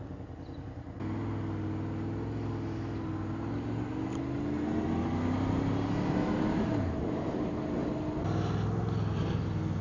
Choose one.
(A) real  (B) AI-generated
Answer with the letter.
A